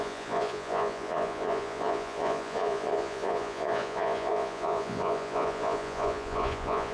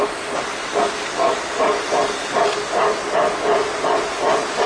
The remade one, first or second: first